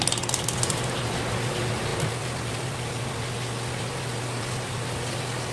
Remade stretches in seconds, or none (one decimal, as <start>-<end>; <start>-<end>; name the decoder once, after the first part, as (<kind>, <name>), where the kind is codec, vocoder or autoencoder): none